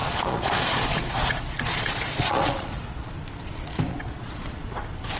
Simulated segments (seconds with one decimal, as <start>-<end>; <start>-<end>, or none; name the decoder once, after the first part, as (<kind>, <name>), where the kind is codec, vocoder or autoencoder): 0.0-3.1 (vocoder, Vocos); 3.9-4.8